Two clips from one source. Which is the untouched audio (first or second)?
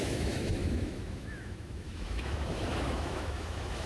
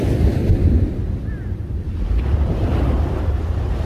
second